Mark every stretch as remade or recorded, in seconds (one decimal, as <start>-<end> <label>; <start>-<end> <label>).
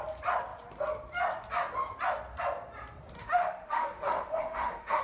0.0-3.2 recorded; 3.2-5.0 remade